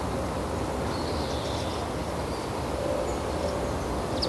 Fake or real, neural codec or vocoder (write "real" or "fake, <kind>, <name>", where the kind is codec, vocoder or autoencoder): real